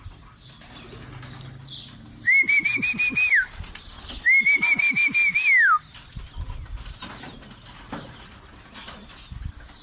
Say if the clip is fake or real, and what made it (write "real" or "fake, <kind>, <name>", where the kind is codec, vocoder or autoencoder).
real